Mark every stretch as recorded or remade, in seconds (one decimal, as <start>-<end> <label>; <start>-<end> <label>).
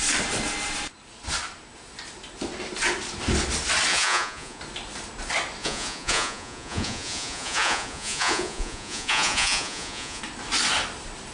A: 0.0-3.9 recorded; 3.9-4.6 remade; 4.6-5.6 recorded; 5.6-10.2 remade; 10.2-11.3 recorded